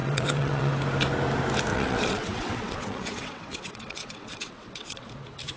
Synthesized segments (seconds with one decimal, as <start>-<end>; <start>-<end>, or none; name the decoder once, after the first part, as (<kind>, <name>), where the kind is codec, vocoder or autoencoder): 0.0-0.7 (vocoder, WaveNeXt); 1.7-5.1